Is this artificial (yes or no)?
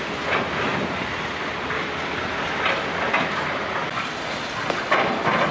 no